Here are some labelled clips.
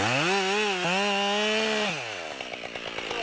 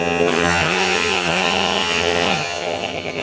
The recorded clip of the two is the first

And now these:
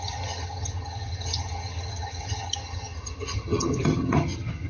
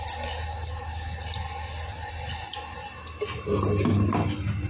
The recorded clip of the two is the second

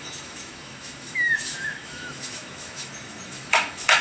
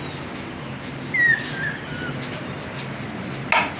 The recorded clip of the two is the second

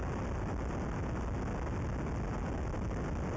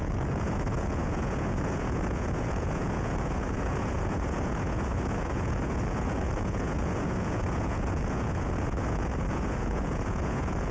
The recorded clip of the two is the first